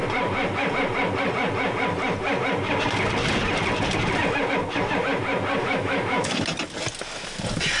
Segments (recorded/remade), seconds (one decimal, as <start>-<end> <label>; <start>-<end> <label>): 0.0-5.6 recorded; 5.6-6.3 remade; 6.3-7.8 recorded